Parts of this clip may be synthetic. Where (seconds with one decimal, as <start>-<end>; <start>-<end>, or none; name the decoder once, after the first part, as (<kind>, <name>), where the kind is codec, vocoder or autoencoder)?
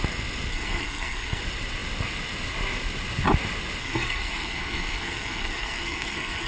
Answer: 0.5-1.4 (codec, SNAC); 3.8-6.5